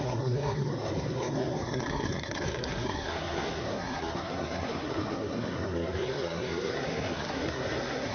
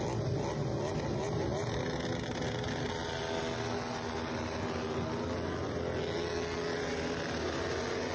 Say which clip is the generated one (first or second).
first